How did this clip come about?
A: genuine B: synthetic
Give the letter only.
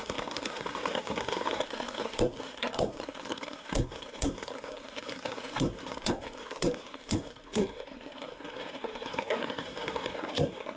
B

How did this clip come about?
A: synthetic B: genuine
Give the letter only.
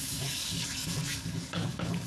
A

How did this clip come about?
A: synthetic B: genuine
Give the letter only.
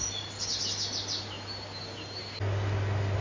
B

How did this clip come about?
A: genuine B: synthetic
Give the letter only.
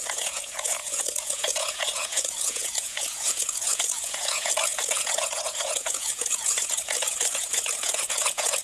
B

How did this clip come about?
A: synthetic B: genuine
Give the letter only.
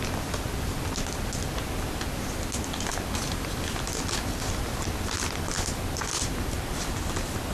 B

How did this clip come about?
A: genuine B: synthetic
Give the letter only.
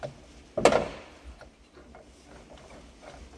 A